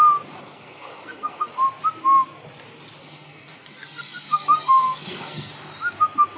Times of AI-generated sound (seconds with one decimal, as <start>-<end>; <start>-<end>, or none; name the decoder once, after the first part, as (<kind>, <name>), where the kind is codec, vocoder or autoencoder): 0.4-1.5 (codec, SNAC); 3.0-5.5